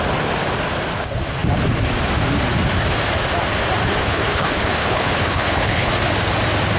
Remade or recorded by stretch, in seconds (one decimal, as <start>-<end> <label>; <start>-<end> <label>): 0.0-4.0 recorded; 4.0-5.9 remade; 5.9-6.8 recorded